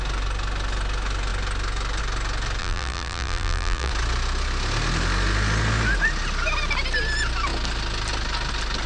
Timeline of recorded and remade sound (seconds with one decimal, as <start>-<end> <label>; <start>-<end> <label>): 0.0-2.6 recorded; 2.6-3.9 remade; 3.9-8.9 recorded